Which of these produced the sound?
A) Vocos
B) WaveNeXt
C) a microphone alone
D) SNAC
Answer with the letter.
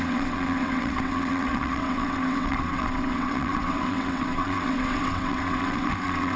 B